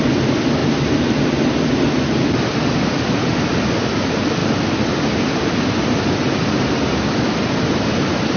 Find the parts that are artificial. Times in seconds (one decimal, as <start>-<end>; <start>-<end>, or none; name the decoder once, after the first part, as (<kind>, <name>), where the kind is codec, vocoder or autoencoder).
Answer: none